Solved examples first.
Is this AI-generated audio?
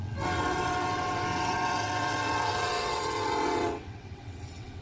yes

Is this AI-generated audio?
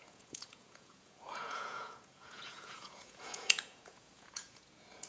yes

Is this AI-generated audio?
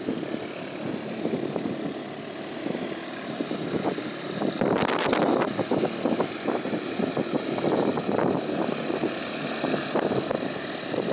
no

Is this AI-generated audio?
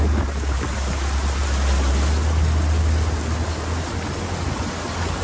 no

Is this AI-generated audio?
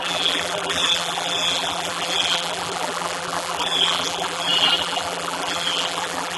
yes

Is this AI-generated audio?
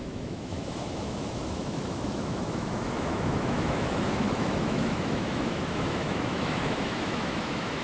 yes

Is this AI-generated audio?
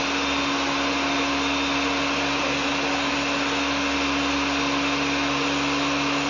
no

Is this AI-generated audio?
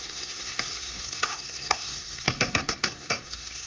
yes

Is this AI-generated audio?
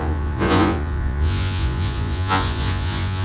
yes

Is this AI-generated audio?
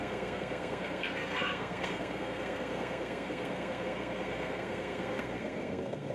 yes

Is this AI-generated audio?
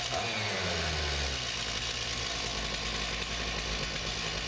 no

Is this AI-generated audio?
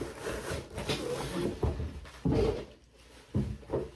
no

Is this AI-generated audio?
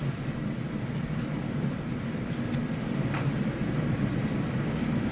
yes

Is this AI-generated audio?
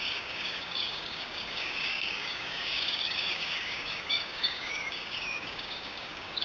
yes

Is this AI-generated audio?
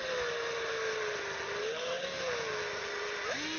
no